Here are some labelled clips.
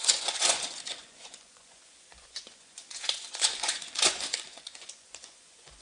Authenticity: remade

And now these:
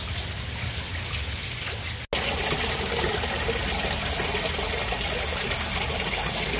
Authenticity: recorded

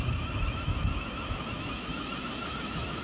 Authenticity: remade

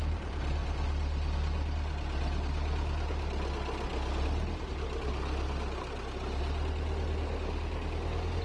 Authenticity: recorded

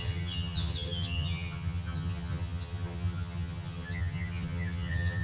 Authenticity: remade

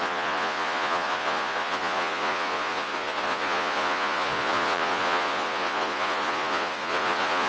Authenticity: remade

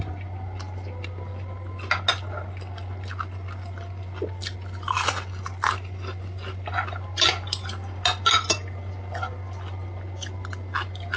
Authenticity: recorded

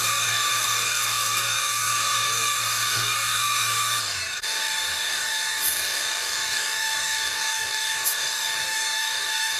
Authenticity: remade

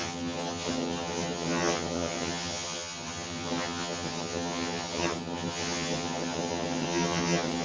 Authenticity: remade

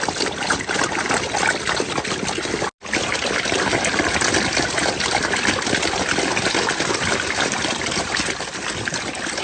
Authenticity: recorded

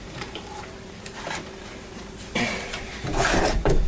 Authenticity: remade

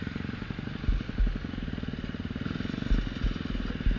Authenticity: recorded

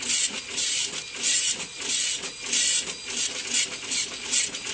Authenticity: recorded